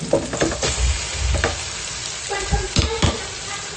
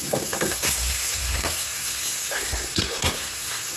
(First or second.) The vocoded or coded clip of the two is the second